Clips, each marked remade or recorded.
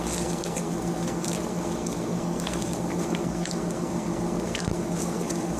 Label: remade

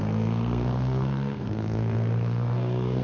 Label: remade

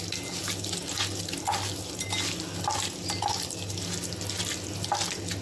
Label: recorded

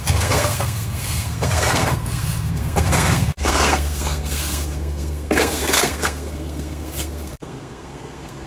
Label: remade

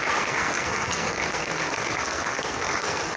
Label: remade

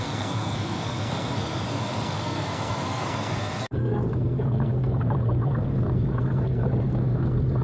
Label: remade